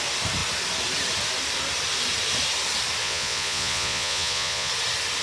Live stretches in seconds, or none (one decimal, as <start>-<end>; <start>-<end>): 0.0-3.0; 4.7-5.2